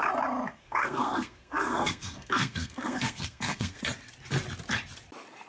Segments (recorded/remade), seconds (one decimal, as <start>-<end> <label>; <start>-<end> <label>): 0.0-0.5 recorded; 0.5-3.8 remade; 3.8-5.5 recorded